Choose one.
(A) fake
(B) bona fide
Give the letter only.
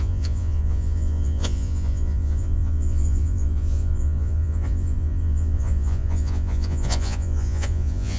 A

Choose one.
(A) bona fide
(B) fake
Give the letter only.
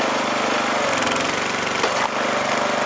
A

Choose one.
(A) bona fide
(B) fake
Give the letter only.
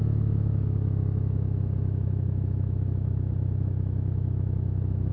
B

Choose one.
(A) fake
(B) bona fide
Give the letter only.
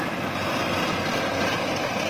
B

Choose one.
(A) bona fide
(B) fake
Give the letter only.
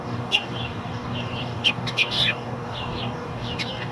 B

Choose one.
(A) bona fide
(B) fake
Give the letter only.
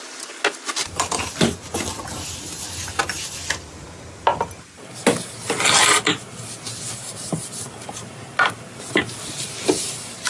A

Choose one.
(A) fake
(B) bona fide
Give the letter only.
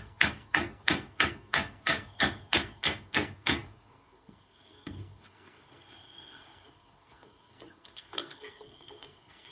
A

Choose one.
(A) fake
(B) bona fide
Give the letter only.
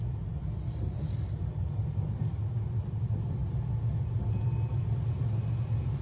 A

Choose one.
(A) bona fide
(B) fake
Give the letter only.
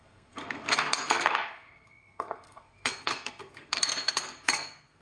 B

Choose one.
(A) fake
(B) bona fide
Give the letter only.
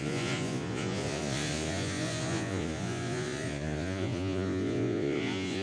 A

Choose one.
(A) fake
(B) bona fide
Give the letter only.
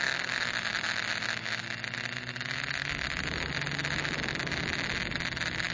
B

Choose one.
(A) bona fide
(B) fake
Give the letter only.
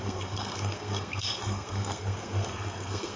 B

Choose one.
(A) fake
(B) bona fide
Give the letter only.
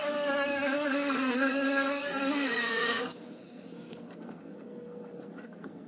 A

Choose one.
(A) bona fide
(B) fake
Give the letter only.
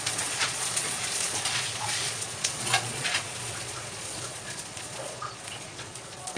B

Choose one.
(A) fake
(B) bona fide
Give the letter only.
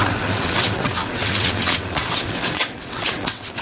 A